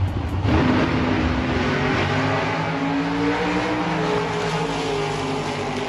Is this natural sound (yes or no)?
yes